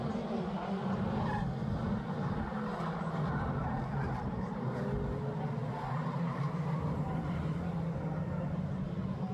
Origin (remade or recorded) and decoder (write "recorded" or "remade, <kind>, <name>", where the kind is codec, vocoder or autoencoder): recorded